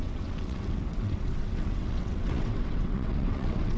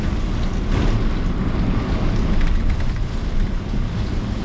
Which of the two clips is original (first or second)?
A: second